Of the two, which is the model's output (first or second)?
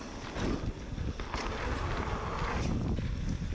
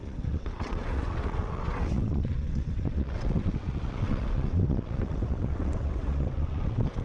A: second